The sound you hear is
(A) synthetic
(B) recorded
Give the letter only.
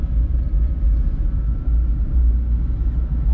B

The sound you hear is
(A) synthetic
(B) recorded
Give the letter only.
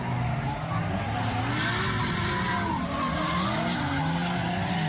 B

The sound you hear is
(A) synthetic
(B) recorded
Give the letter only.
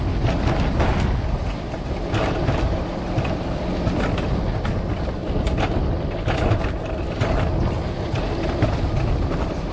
B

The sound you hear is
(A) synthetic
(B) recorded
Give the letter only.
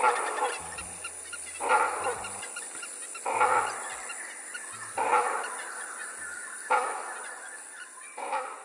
B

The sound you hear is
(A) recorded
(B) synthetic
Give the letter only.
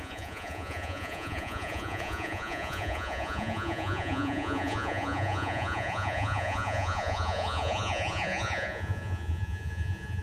B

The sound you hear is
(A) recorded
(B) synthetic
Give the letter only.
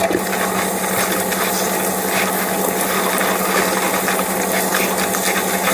A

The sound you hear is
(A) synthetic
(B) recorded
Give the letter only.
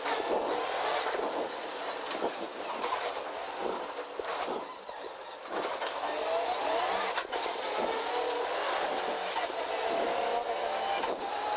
B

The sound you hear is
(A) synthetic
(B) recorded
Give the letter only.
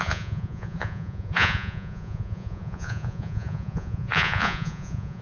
A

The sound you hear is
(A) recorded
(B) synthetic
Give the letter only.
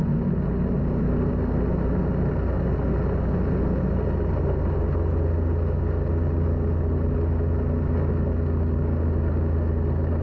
A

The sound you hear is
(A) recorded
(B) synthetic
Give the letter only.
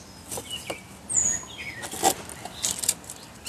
A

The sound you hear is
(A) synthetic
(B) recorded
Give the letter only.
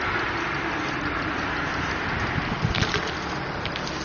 B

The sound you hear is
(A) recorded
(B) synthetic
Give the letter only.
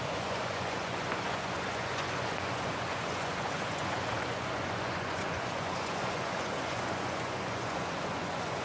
B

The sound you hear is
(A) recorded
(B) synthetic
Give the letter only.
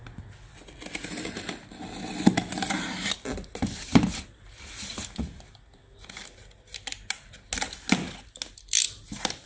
A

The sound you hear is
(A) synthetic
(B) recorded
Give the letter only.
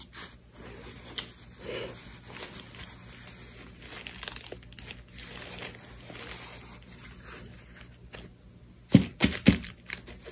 B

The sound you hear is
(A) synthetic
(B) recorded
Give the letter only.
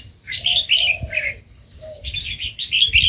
B